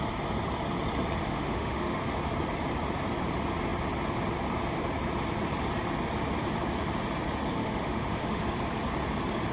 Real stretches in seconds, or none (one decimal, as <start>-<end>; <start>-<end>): 0.0-1.2; 2.0-7.6; 8.4-9.5